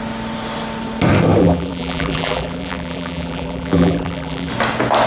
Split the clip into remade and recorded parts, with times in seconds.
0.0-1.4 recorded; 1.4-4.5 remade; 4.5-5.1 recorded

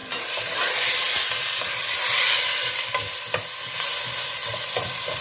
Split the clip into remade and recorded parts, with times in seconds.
0.0-5.2 recorded

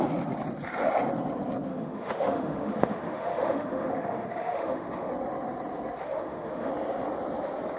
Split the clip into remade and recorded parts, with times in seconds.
0.0-1.7 recorded; 1.7-5.1 remade; 5.1-6.0 recorded; 6.0-6.7 remade; 6.7-7.8 recorded

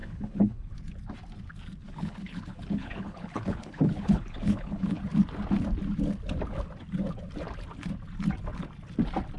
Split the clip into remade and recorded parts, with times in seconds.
0.0-0.7 remade; 0.7-1.8 recorded; 1.8-5.0 remade; 5.0-9.4 recorded